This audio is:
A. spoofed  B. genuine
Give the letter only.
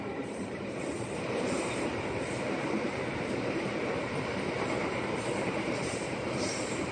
A